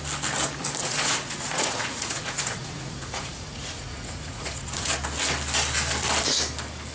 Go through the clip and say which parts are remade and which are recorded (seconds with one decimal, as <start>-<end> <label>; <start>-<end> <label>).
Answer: 0.0-0.8 recorded; 0.8-4.9 remade; 4.9-6.9 recorded